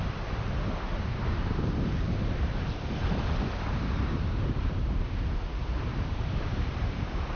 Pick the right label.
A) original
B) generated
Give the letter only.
B